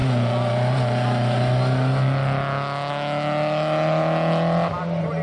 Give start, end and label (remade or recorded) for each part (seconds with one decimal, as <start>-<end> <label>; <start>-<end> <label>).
0.0-5.2 recorded